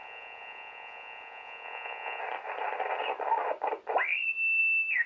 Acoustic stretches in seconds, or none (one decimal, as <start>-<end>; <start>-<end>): 2.2-5.1